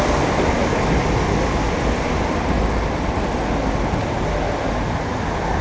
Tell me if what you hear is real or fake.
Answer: real